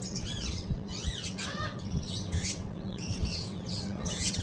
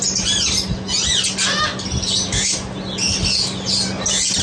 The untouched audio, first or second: second